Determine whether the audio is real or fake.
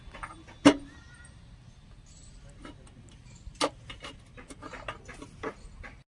real